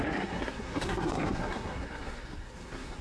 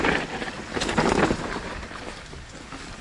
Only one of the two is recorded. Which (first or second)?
second